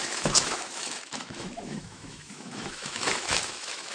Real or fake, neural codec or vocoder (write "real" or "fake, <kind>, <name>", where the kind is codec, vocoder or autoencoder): fake, autoencoder, DAC-VAE